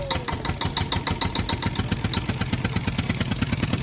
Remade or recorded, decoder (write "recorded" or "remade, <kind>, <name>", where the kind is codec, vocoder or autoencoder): recorded